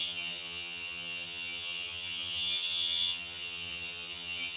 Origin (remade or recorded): remade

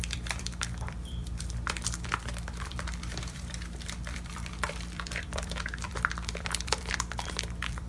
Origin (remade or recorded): remade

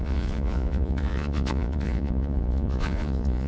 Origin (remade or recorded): remade